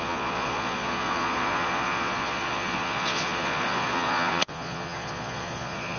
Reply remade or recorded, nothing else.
remade